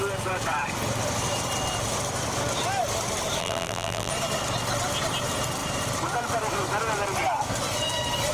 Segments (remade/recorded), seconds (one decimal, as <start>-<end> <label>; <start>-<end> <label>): 0.0-3.4 recorded; 3.4-4.1 remade; 4.1-8.3 recorded